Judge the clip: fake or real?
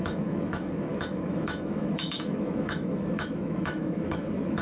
fake